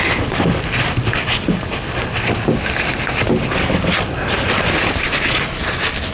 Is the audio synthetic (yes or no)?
no